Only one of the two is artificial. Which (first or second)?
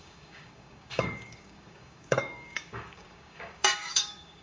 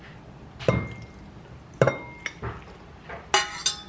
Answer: first